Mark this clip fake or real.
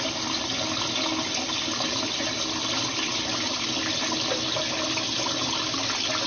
real